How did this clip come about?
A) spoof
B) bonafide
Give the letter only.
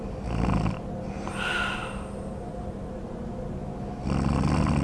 B